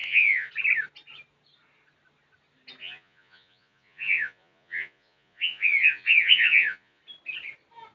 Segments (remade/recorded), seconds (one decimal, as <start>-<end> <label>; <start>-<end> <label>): 0.0-0.5 remade; 0.5-2.8 recorded; 2.8-7.0 remade; 7.0-7.9 recorded